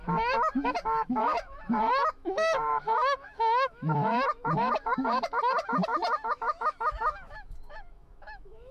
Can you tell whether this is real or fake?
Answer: fake